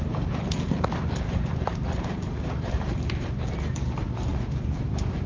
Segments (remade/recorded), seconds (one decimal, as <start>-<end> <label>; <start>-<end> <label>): 0.0-5.3 remade